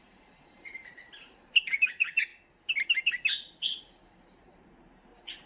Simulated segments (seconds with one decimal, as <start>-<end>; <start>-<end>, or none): 0.0-2.3; 3.8-5.5